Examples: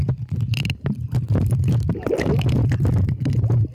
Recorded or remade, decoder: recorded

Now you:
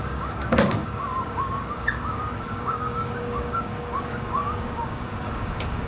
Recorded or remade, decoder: remade, codec, DAC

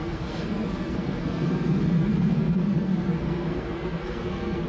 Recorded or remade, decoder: remade, codec, SNAC